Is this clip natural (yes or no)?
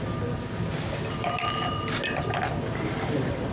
yes